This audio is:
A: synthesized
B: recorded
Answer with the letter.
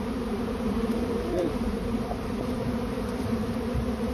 A